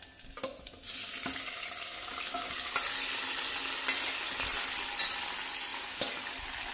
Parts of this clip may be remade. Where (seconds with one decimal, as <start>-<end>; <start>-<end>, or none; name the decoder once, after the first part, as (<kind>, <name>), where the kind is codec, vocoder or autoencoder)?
none